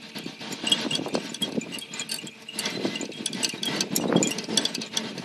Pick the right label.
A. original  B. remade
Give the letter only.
A